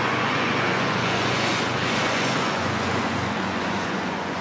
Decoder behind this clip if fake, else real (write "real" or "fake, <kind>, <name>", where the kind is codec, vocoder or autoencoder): fake, vocoder, Vocos